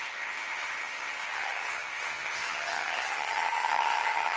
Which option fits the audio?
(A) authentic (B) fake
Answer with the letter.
B